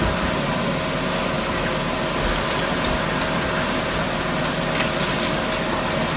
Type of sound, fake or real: real